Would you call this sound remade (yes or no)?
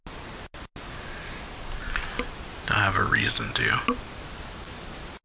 no